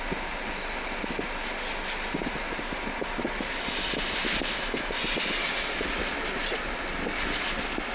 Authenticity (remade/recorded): recorded